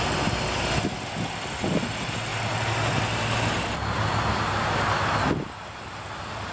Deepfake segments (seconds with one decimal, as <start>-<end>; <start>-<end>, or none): none